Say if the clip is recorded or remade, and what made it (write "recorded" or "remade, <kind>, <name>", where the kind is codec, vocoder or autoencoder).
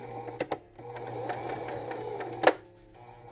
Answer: recorded